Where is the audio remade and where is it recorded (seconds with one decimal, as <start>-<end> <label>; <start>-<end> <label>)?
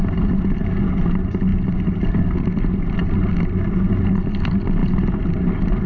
0.0-5.9 recorded